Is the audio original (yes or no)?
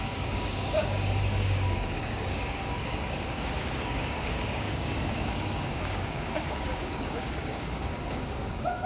no